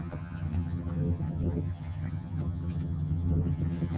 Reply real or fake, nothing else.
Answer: fake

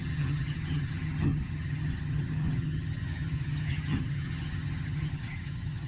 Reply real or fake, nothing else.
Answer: fake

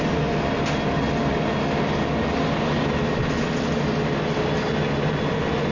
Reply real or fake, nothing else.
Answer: real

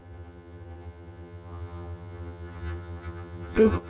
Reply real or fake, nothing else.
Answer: fake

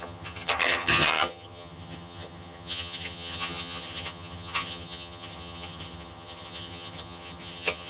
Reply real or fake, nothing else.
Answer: fake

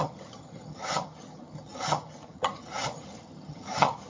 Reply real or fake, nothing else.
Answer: fake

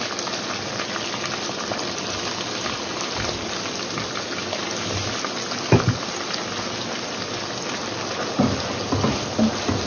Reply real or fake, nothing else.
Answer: real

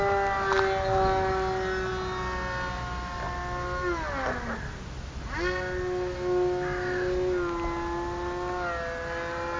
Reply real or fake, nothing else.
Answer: real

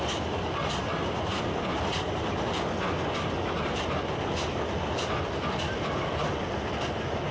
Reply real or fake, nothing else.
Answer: real